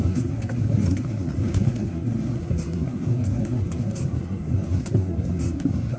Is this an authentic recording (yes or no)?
no